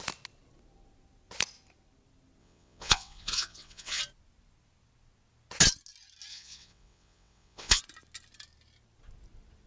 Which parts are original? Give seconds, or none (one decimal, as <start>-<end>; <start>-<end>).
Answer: 0.0-2.4; 4.0-6.3; 7.8-9.7